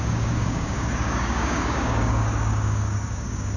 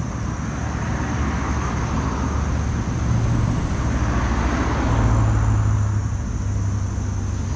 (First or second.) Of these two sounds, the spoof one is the first